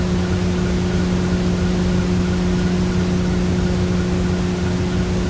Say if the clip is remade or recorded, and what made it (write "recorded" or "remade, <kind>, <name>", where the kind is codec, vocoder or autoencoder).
recorded